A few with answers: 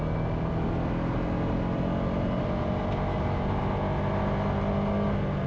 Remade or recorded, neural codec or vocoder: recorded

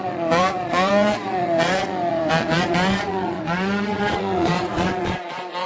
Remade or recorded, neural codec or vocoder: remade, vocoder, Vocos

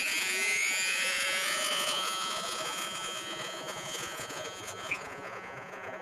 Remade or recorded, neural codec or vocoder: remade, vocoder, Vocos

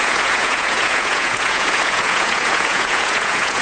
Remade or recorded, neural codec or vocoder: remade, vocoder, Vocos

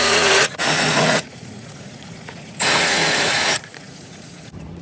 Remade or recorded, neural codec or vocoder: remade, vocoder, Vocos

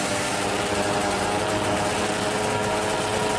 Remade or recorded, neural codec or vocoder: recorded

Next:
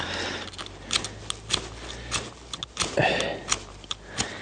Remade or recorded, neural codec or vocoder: recorded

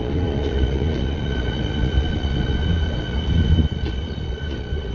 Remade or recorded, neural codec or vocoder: remade, vocoder, Vocos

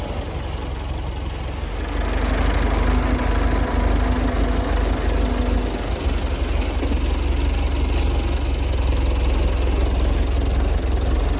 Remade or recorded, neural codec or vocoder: recorded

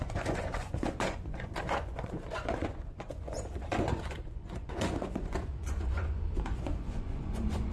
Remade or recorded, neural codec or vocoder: remade, vocoder, Vocos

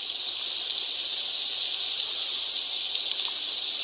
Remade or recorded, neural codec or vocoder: recorded